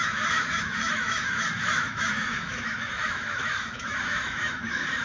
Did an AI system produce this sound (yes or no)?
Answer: yes